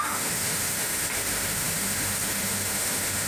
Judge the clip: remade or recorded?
remade